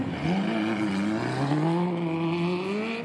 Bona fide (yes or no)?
yes